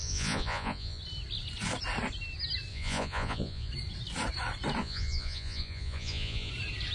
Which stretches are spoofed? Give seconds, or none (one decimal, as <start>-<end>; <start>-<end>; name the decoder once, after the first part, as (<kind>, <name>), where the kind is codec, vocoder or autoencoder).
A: 0.0-1.0 (vocoder, Vocos); 2.7-3.7; 4.8-6.5